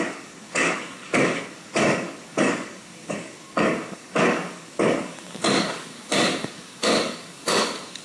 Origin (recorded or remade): remade